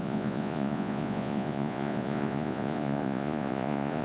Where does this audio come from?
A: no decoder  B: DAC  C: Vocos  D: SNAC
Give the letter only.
C